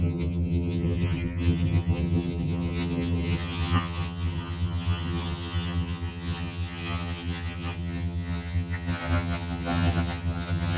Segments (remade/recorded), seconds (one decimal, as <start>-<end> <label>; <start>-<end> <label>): 0.0-10.8 remade